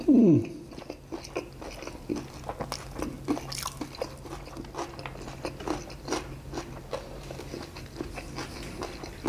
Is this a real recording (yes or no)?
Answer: yes